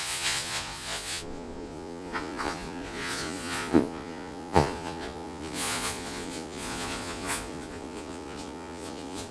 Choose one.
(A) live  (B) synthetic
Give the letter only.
B